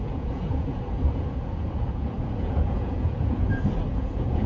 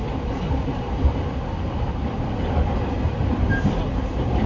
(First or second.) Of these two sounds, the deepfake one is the first